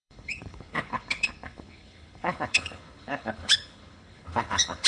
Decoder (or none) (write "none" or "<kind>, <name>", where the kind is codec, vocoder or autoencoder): codec, HILCodec